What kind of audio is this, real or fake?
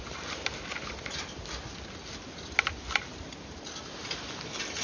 real